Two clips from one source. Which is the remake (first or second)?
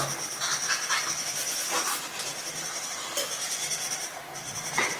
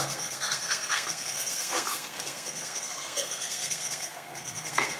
second